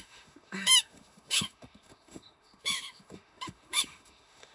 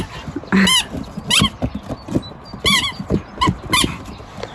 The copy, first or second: first